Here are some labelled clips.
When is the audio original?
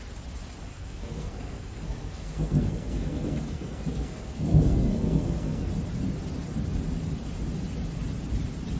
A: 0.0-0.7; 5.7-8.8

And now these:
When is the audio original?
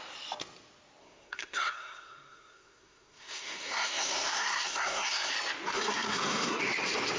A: 0.0-1.0; 5.3-5.7; 6.6-7.2